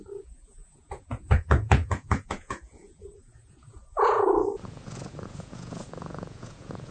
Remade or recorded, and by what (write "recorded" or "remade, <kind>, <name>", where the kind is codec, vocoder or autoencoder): remade, vocoder, Vocos